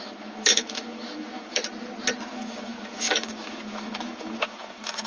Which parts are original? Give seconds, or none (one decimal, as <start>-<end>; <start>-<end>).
1.6-2.3